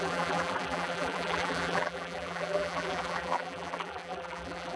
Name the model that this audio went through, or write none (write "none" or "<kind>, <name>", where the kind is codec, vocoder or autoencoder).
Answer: vocoder, BigVGAN v2